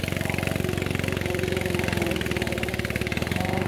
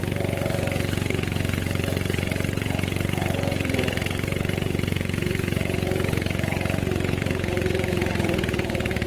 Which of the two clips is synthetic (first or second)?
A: second